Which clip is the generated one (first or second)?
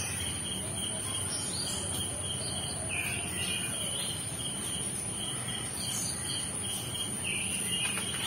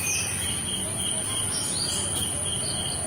first